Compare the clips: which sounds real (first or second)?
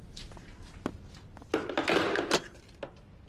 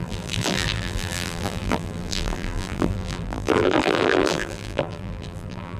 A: first